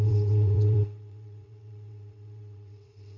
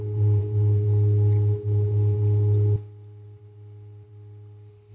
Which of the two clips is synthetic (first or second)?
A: first